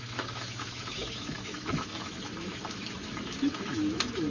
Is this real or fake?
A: fake